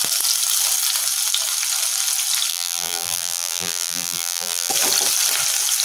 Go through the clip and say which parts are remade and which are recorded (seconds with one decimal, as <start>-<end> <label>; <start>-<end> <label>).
0.0-2.5 recorded; 2.5-4.7 remade; 4.7-5.8 recorded